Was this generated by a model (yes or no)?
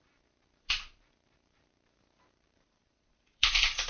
yes